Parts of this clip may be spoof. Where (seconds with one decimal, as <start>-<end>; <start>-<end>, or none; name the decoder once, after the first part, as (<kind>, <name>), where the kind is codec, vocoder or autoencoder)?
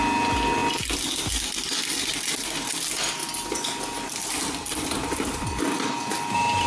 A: none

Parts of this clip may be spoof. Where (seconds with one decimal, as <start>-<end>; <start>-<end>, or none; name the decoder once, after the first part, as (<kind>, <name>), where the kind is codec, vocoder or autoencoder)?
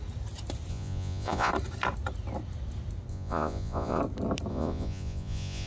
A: 0.7-1.5 (vocoder, Vocos); 3.1-4.0; 4.5-5.7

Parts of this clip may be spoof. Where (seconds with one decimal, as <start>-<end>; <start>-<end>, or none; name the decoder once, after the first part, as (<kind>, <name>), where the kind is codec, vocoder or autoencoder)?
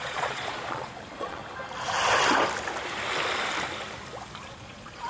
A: 0.0-1.4 (vocoder, Vocos); 4.5-5.1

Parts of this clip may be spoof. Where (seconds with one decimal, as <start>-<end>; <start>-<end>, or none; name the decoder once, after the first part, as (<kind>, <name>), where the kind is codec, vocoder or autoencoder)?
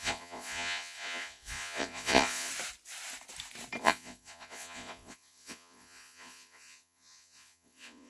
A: 0.0-2.5 (vocoder, Vocos); 3.8-8.1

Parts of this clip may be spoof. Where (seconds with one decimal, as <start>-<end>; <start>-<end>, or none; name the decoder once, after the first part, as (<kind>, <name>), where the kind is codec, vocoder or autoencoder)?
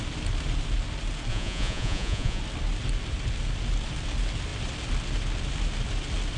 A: 1.3-2.4 (vocoder, Vocos)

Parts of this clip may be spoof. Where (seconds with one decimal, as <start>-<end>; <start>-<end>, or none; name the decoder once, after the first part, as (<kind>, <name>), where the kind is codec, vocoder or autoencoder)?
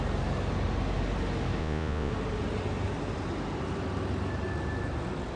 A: 1.6-2.1 (vocoder, Vocos)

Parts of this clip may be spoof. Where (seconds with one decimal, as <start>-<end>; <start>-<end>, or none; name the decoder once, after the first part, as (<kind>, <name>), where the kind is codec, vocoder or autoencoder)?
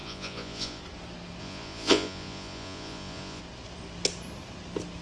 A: 0.0-0.8 (vocoder, Vocos); 1.4-3.4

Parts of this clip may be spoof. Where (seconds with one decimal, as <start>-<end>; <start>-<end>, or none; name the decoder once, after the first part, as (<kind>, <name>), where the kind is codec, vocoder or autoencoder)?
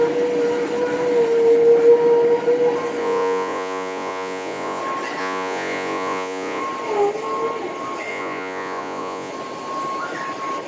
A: 3.0-4.8 (vocoder, Vocos); 5.2-6.6; 8.1-9.3